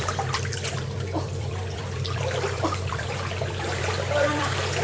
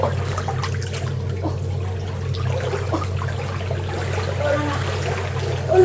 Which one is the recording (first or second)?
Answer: second